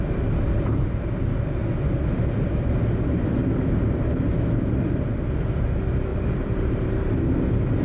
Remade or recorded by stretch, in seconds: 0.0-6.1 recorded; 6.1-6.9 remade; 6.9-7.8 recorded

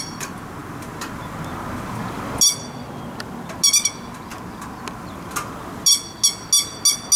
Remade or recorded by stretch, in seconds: 0.0-7.2 recorded

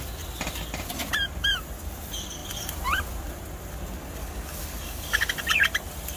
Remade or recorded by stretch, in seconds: 0.0-4.2 recorded; 4.2-5.3 remade; 5.3-6.2 recorded

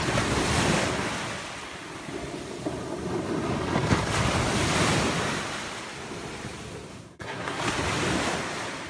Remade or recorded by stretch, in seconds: 0.0-6.9 recorded; 6.9-7.6 remade; 7.6-8.9 recorded